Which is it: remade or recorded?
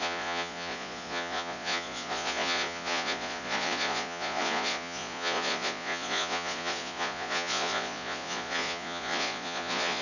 remade